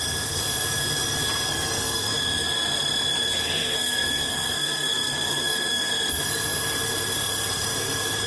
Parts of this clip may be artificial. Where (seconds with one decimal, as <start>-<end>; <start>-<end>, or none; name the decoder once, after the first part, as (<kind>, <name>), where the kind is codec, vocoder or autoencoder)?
1.5-2.1 (codec, SNAC); 3.4-5.9